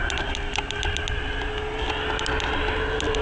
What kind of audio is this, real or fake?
real